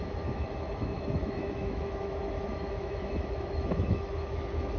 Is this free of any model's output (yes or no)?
no